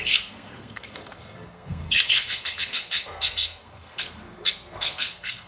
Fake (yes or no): yes